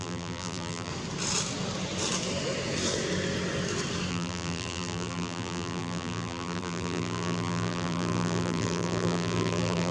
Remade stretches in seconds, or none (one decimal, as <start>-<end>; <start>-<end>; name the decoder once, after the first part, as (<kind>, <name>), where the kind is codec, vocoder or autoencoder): 0.0-0.9 (vocoder, BigVGAN v2); 4.1-9.9